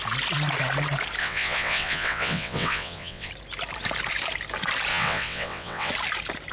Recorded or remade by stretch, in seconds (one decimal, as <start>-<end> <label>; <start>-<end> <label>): 0.0-1.2 recorded; 1.2-3.3 remade; 3.3-4.9 recorded; 4.9-5.9 remade; 5.9-6.5 recorded